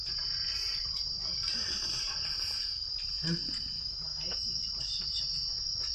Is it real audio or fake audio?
real